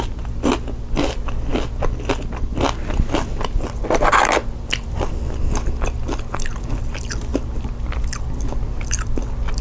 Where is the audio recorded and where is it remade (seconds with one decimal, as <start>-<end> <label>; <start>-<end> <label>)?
0.0-9.6 recorded